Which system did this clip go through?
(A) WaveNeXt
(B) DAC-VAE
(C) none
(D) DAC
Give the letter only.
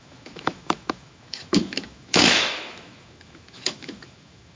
B